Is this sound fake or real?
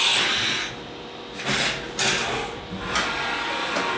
real